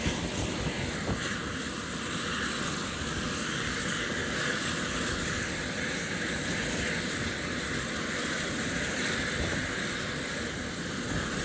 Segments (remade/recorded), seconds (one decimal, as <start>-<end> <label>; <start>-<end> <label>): 0.0-2.6 recorded; 2.6-5.6 remade; 5.6-11.4 recorded

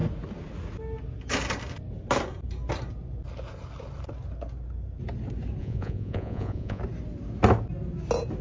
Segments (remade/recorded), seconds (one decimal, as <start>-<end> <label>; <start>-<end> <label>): 0.0-5.6 recorded; 5.6-6.8 remade; 6.8-8.4 recorded

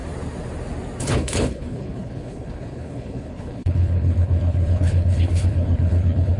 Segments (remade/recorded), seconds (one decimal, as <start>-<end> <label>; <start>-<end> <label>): 0.0-1.0 recorded; 1.0-6.4 remade

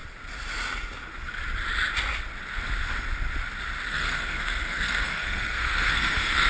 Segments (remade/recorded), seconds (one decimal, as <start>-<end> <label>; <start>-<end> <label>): 0.0-3.9 recorded; 3.9-6.5 remade

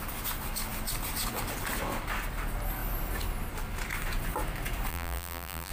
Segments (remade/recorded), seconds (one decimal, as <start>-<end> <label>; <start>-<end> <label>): 0.0-4.9 recorded; 4.9-5.7 remade

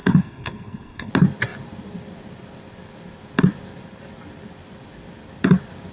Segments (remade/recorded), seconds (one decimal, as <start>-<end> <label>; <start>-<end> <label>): 0.0-1.1 remade; 1.1-5.9 recorded

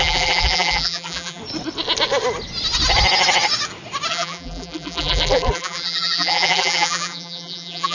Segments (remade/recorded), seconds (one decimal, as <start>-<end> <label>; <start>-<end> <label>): 0.0-1.4 remade; 1.4-4.1 recorded; 4.1-7.9 remade

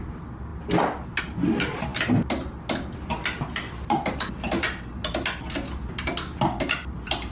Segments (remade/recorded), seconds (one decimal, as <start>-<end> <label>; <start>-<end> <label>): 0.0-7.3 recorded